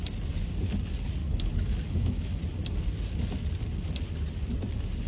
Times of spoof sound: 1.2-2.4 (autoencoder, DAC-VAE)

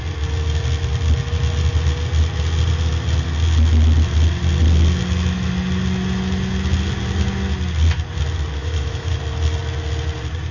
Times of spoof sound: 8.6-9.2 (autoencoder, DAC-VAE)

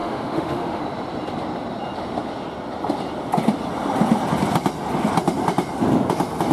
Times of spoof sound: 0.0-0.8 (autoencoder, DAC-VAE)

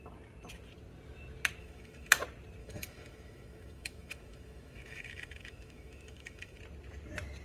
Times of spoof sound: 1.6-2.1 (autoencoder, DAC-VAE); 2.6-6.6

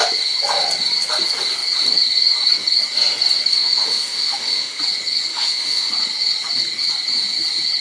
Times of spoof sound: 3.5-4.8 (autoencoder, DAC-VAE); 5.3-5.9

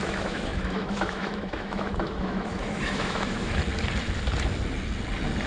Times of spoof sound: 0.0-3.6 (autoencoder, DAC-VAE)

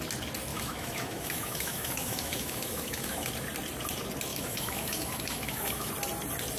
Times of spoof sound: 0.5-3.3 (autoencoder, DAC-VAE); 4.3-5.9